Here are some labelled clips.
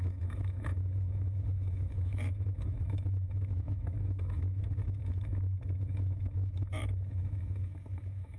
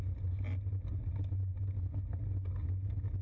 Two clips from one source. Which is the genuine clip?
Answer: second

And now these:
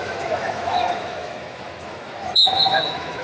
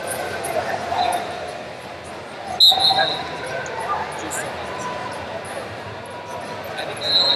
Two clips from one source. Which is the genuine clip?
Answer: second